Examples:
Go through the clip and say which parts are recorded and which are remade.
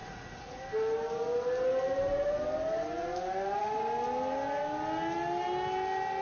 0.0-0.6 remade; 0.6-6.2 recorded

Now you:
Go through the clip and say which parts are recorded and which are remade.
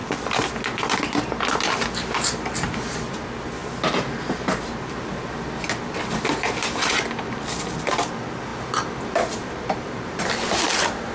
0.0-8.5 recorded; 8.5-10.2 remade; 10.2-11.1 recorded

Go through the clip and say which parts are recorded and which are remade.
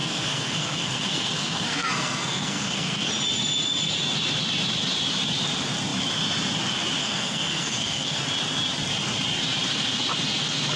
0.0-3.1 remade; 3.1-7.0 recorded; 7.0-8.2 remade; 8.2-10.8 recorded